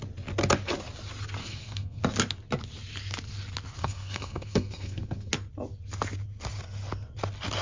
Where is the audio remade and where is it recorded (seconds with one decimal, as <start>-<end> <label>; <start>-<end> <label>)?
0.0-1.4 recorded; 1.4-2.0 remade; 2.0-3.8 recorded; 3.8-5.3 remade; 5.3-7.6 recorded